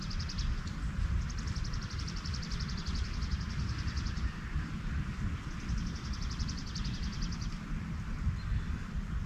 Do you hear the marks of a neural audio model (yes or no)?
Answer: no